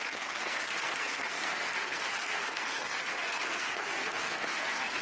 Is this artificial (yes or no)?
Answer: yes